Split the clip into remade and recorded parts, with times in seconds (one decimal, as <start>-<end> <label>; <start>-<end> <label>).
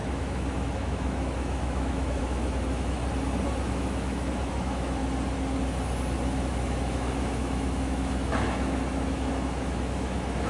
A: 0.0-3.0 remade; 3.0-3.6 recorded; 3.6-5.0 remade; 5.0-6.5 recorded; 6.5-10.5 remade